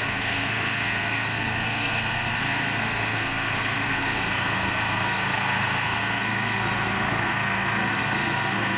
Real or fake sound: fake